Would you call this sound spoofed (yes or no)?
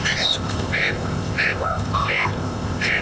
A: yes